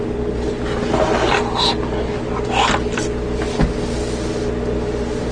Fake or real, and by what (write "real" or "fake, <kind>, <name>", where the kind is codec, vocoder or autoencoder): real